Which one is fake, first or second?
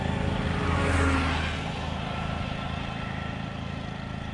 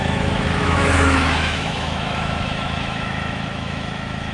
second